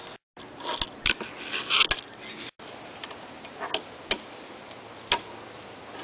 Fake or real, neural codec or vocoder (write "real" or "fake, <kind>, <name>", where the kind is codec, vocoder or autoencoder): real